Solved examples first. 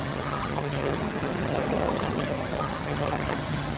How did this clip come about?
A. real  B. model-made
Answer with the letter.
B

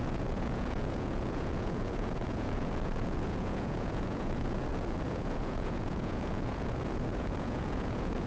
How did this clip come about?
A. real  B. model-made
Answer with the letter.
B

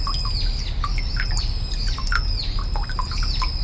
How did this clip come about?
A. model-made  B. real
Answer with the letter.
B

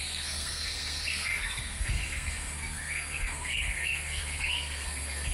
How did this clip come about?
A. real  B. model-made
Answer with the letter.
B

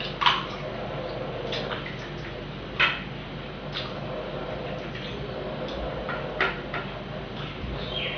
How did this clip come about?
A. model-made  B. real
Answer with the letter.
B